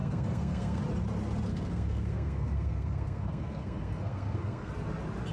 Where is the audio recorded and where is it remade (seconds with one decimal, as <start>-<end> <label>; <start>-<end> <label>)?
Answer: 0.0-0.8 remade; 0.8-1.5 recorded; 1.5-4.7 remade; 4.7-5.3 recorded